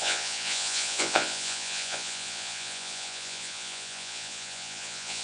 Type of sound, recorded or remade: remade